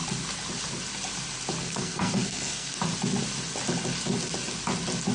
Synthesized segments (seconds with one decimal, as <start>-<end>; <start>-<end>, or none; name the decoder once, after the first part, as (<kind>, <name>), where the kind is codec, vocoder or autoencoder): 1.6-2.7 (codec, SNAC)